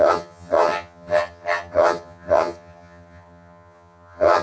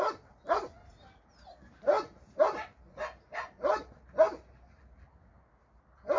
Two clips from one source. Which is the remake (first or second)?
first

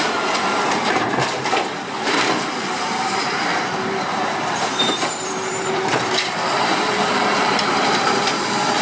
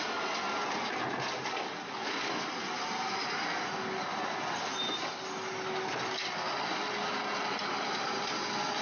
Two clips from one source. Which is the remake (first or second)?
first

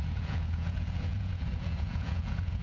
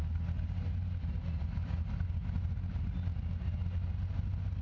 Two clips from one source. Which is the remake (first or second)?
first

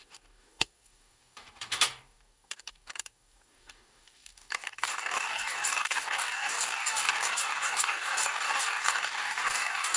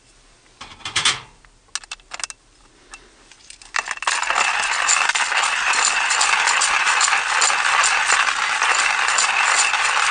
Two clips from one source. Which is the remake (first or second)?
first